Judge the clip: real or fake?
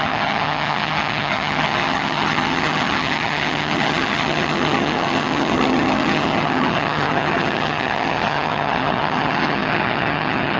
fake